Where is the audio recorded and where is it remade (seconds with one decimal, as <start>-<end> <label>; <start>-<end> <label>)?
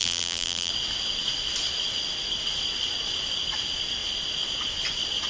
0.0-0.7 remade; 0.7-5.3 recorded